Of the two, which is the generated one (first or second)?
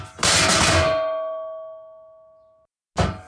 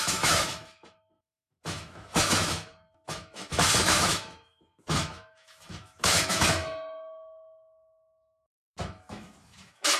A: second